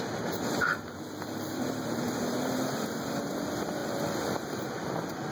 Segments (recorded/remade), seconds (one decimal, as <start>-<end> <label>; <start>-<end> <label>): 0.0-0.7 recorded; 0.7-3.2 remade; 3.2-3.8 recorded; 3.8-5.3 remade